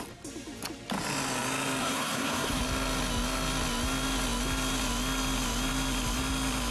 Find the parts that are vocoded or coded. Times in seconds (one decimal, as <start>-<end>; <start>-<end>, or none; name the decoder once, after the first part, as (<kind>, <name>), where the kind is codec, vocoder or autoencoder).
1.8-2.6 (codec, SNAC)